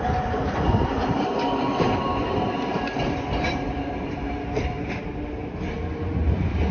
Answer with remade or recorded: recorded